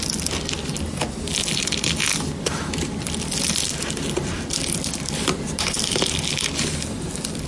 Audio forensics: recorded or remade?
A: recorded